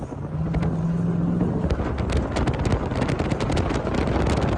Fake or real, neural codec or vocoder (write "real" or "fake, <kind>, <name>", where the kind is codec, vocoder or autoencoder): real